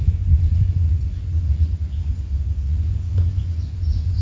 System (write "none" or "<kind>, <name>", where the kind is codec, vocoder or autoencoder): vocoder, Vocos